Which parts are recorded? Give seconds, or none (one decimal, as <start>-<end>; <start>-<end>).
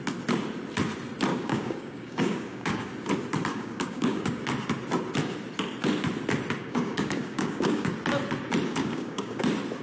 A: 0.0-1.3; 2.9-3.5; 4.4-6.6; 7.9-8.7; 9.4-9.8